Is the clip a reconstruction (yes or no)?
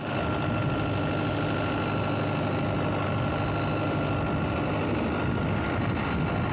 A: no